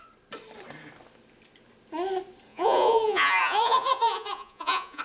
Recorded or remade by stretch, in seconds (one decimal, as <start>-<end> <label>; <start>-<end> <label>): 0.0-2.5 recorded; 2.5-5.0 remade